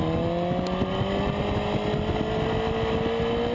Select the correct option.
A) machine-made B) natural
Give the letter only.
B